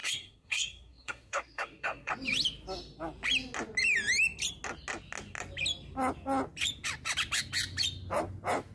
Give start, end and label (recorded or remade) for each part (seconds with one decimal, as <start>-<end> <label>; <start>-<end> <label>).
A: 0.0-2.1 remade; 2.1-8.7 recorded